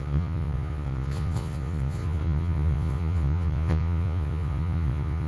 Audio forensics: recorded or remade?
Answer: remade